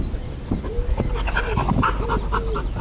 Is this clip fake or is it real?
real